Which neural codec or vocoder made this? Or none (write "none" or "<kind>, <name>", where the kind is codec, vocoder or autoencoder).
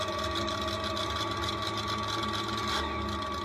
none